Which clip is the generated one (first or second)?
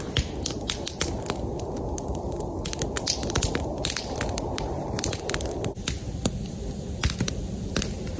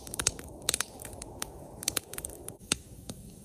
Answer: second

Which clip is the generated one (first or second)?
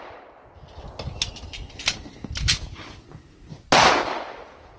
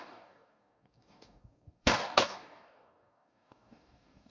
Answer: second